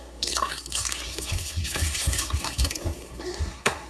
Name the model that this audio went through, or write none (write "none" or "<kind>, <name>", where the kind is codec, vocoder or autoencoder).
codec, SNAC